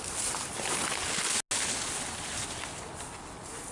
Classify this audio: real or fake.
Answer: real